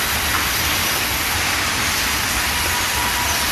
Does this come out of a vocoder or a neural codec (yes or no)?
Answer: no